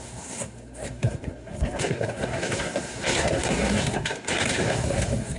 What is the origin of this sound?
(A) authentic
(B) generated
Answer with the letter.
B